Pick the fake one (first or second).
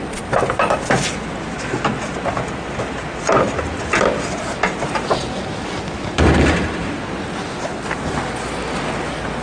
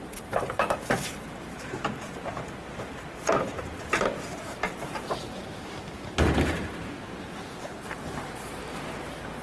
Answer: second